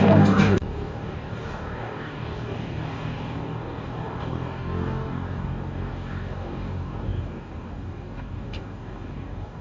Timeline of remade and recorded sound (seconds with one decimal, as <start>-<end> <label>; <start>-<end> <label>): 0.0-9.6 remade